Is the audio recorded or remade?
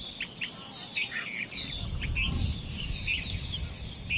recorded